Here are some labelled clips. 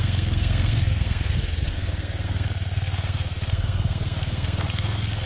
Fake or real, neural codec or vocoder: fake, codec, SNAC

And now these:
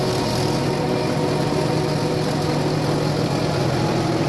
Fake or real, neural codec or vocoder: real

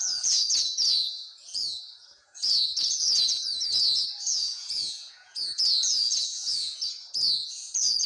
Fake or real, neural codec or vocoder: fake, vocoder, Vocos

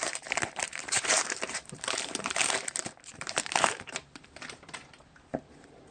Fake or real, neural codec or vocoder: fake, vocoder, BigVGAN v2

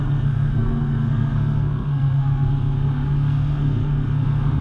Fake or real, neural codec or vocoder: fake, codec, SNAC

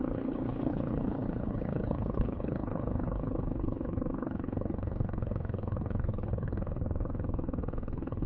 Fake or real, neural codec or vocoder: fake, codec, HILCodec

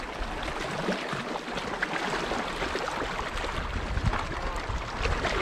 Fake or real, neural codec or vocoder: real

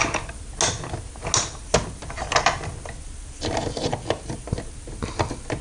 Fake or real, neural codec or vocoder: real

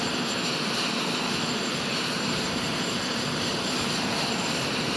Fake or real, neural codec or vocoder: fake, vocoder, BigVGAN v2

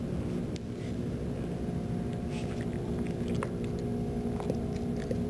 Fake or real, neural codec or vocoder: real